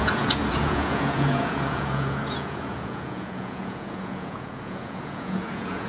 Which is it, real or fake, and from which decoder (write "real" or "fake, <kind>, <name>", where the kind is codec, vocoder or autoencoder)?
fake, vocoder, Vocos